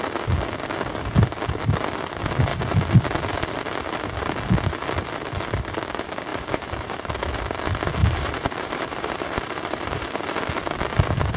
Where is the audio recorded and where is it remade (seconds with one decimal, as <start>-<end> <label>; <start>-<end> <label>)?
0.0-6.3 recorded; 6.3-6.9 remade; 6.9-8.0 recorded; 8.0-10.5 remade; 10.5-11.4 recorded